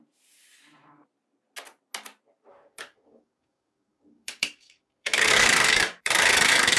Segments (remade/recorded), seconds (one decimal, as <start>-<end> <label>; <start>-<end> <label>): 0.0-2.5 recorded; 2.5-6.8 remade